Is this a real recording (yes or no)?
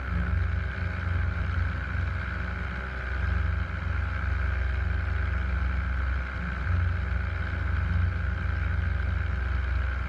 yes